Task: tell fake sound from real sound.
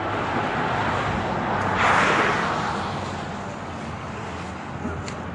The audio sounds real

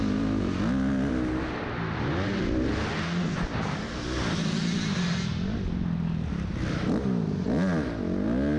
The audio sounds real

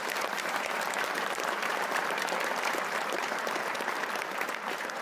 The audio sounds fake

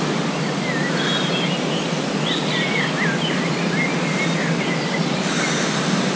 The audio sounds real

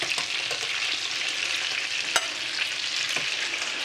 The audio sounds real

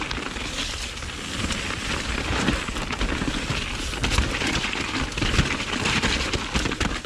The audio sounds real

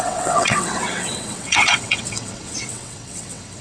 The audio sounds fake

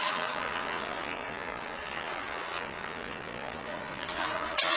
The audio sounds fake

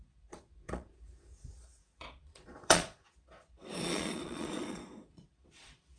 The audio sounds fake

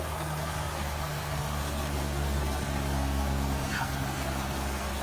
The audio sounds fake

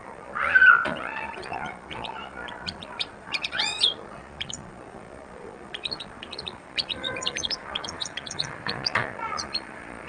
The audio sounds fake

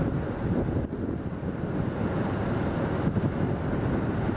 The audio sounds real